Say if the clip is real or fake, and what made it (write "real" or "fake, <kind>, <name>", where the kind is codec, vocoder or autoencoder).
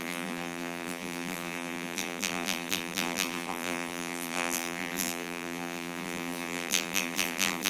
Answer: fake, vocoder, BigVGAN v2